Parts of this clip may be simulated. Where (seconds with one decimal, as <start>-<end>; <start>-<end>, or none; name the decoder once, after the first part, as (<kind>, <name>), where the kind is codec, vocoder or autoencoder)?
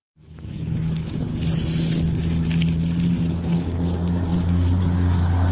0.0-1.4 (codec, DAC); 3.3-5.5